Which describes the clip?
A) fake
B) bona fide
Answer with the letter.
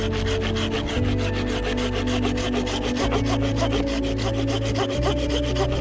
B